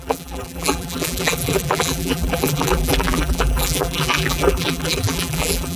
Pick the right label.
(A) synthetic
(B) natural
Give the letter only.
A